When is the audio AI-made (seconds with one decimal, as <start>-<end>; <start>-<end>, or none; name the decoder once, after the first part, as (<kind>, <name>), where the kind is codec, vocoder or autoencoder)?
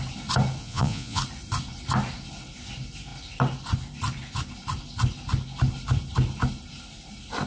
0.6-1.2 (vocoder, Vocos)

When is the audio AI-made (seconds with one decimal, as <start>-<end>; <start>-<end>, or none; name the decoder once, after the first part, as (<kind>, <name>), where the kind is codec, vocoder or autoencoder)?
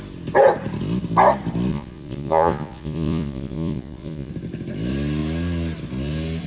1.7-4.3 (vocoder, Vocos)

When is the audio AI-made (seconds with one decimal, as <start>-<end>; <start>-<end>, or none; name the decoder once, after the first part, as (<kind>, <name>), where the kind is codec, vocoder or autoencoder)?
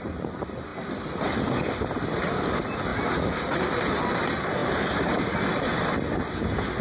none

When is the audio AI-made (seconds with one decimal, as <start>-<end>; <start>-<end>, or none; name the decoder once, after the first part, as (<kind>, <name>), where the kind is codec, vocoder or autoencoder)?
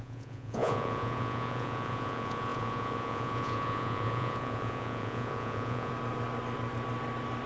0.0-5.9 (vocoder, Vocos)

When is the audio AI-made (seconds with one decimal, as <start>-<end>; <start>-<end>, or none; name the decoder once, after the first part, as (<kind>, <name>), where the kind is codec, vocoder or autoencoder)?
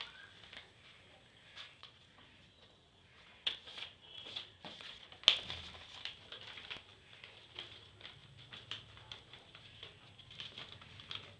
1.8-5.1 (vocoder, Vocos)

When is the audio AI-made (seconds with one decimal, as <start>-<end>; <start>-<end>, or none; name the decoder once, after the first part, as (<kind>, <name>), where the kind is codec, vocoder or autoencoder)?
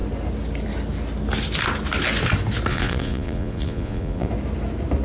2.7-4.3 (vocoder, Vocos)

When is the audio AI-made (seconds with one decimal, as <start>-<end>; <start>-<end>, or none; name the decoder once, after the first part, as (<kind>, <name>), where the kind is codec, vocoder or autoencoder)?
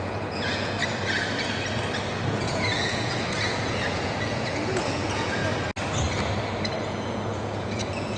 0.0-0.8 (vocoder, Vocos); 2.3-5.4; 6.8-8.2